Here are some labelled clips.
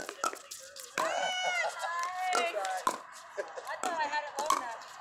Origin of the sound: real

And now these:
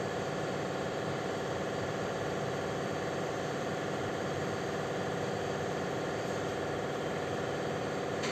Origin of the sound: fake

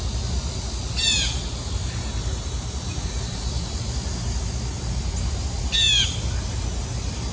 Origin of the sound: real